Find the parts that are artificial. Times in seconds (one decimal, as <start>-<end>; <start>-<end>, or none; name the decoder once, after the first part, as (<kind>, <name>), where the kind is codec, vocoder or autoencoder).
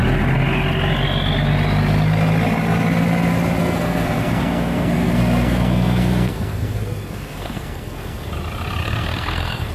3.6-8.3 (codec, SNAC); 8.8-9.7